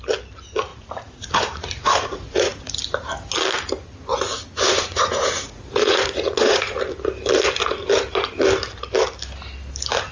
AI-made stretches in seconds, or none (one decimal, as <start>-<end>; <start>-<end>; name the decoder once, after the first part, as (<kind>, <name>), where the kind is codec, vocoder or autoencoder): 0.7-2.7 (vocoder, Vocos); 4.1-6.8